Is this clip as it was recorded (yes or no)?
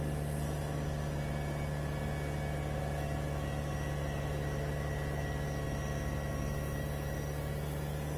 yes